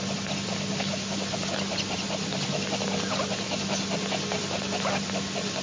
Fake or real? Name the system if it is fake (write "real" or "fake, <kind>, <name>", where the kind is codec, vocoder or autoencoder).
real